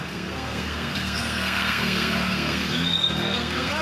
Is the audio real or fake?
fake